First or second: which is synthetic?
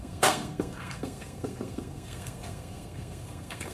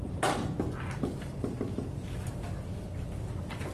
first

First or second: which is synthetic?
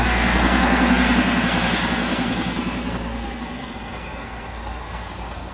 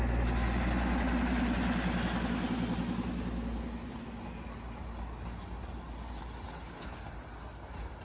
first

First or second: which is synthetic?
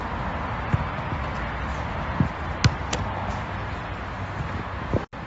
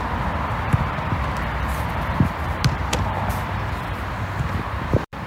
second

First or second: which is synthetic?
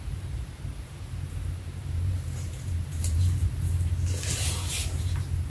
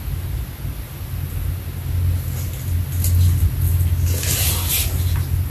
first